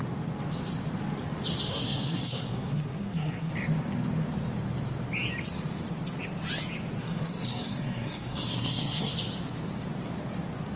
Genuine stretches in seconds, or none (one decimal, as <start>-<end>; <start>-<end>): 0.0-1.7; 3.5-7.0; 9.1-10.8